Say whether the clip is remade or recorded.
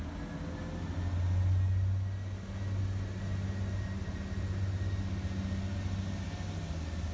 recorded